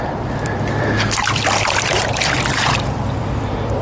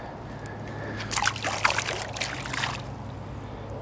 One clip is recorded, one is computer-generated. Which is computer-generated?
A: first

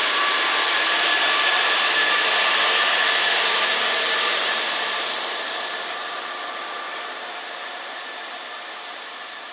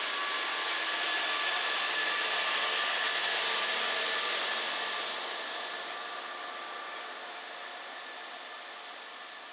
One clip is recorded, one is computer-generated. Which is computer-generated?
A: first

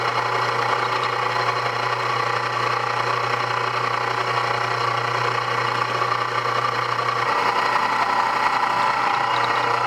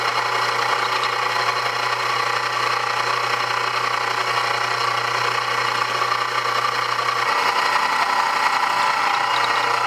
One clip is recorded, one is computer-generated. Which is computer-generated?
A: first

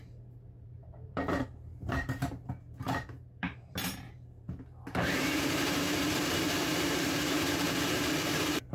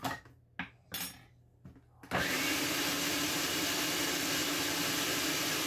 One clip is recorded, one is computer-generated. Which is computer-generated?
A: first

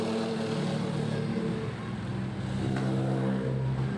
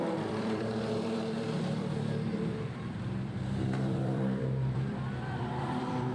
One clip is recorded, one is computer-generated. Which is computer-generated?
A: second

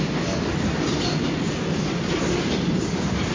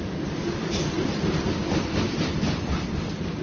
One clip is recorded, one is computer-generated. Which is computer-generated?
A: second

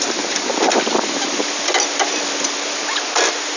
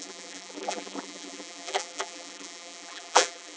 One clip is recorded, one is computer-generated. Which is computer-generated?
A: second